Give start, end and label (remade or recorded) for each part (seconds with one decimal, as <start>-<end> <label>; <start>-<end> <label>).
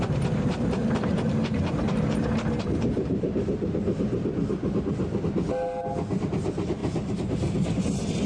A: 0.0-0.8 recorded; 0.8-3.6 remade; 3.6-6.8 recorded; 6.8-7.8 remade; 7.8-8.3 recorded